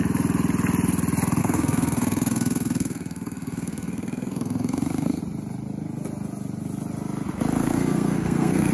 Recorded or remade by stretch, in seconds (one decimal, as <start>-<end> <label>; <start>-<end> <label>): 0.0-1.4 recorded; 1.4-5.2 remade; 5.2-7.6 recorded; 7.6-8.7 remade